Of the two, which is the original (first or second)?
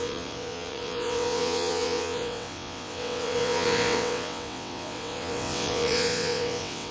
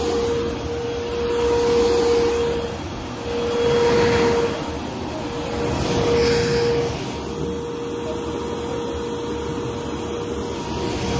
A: second